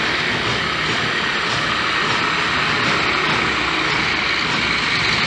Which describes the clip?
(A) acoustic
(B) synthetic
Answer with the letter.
A